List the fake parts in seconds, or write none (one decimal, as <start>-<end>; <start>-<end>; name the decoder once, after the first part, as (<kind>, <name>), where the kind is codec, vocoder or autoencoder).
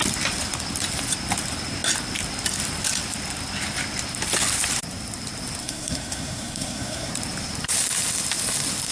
5.6-7.1 (codec, SNAC)